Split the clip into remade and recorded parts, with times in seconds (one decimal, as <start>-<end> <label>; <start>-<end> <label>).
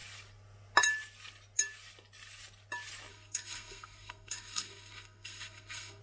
0.0-3.1 recorded; 3.1-6.0 remade